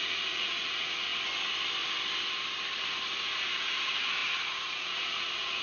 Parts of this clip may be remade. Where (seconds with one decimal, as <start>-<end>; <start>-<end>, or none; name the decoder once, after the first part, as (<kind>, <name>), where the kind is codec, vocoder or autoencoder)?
0.0-1.1 (vocoder, Vocos); 3.2-5.6